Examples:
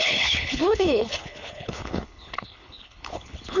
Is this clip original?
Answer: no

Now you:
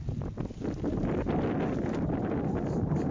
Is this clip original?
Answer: yes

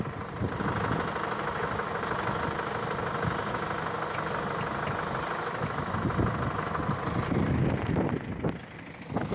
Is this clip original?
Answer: yes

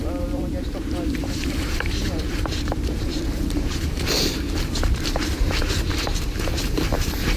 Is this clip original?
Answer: no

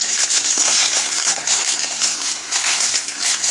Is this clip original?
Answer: no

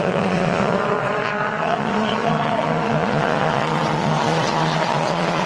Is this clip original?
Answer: no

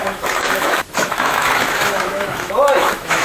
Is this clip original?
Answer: no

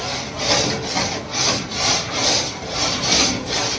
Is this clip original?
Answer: yes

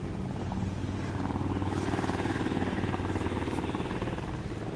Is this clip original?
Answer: yes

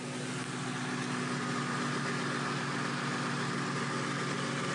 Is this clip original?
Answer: yes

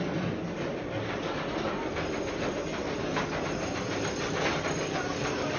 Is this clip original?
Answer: yes